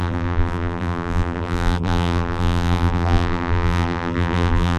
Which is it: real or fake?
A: fake